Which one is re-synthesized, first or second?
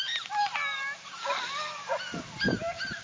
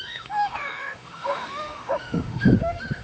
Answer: second